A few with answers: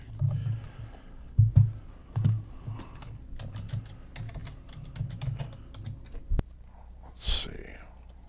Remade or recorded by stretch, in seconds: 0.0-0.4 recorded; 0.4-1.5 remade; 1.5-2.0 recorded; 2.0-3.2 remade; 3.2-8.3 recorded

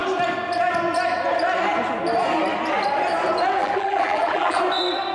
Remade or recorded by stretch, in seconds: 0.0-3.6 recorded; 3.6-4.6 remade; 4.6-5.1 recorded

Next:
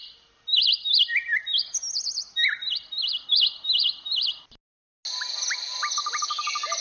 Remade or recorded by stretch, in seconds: 0.0-6.8 recorded

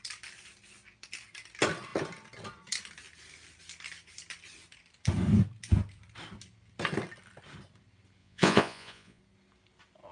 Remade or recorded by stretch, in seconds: 0.0-8.2 recorded; 8.2-9.2 remade; 9.2-10.1 recorded

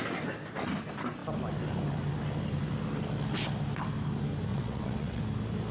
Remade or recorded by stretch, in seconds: 0.0-4.5 recorded; 4.5-5.2 remade; 5.2-5.7 recorded

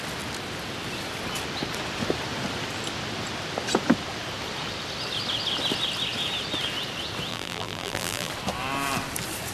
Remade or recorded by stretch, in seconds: 0.0-7.3 recorded; 7.3-8.3 remade; 8.3-9.5 recorded